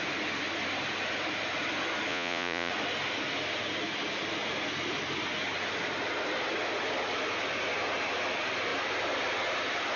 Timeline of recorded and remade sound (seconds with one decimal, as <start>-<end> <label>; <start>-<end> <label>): 0.0-2.1 recorded; 2.1-2.7 remade; 2.7-10.0 recorded